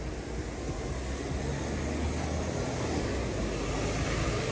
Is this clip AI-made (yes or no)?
no